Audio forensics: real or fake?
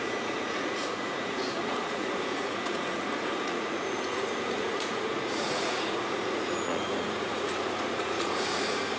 fake